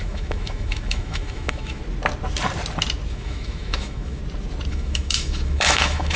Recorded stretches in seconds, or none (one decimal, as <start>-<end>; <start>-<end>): 1.8-3.1; 4.2-4.7